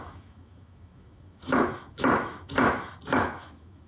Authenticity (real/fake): fake